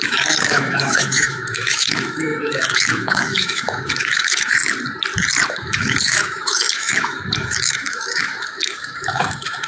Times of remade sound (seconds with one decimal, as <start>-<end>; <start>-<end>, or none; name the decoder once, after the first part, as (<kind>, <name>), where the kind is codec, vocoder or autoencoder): 0.0-4.6 (autoencoder, DAC-VAE); 5.5-9.7